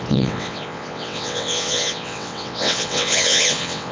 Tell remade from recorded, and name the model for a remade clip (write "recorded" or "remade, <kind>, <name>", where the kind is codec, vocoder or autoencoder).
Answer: remade, vocoder, WaveNeXt